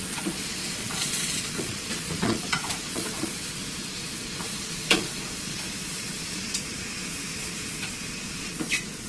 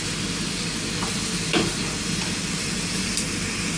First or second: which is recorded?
second